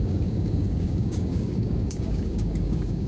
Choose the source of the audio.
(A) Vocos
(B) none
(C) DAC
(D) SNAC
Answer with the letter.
C